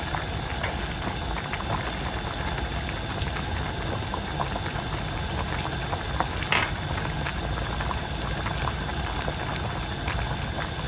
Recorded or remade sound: recorded